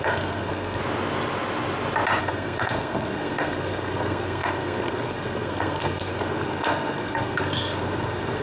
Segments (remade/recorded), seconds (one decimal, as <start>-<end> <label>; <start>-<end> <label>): 0.0-0.8 remade; 0.8-2.2 recorded; 2.2-8.4 remade